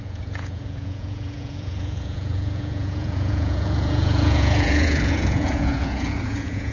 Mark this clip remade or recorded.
remade